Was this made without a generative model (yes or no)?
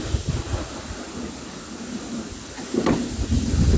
yes